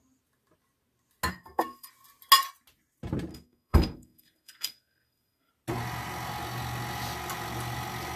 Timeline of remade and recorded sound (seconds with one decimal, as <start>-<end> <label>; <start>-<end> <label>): 0.0-1.3 recorded; 1.3-1.9 remade; 1.9-3.3 recorded; 3.3-5.5 remade; 5.5-8.2 recorded